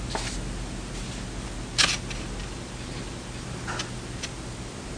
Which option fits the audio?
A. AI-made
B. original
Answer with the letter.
B